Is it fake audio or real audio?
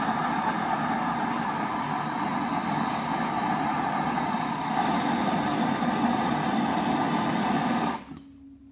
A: real